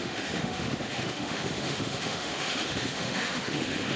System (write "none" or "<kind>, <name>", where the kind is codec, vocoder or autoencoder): autoencoder, DAC-VAE